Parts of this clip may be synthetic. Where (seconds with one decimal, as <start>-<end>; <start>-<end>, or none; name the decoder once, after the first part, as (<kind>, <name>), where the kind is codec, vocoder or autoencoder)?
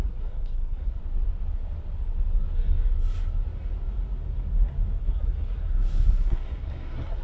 0.0-1.0 (codec, SNAC); 5.0-7.2